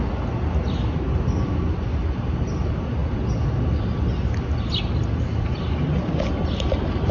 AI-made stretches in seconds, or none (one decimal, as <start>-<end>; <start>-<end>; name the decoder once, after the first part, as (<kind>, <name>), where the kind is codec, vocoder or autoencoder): none